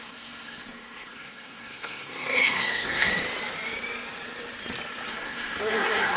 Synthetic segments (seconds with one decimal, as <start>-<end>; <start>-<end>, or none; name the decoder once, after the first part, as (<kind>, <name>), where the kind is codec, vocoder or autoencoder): 0.0-3.1 (codec, SNAC); 5.1-6.2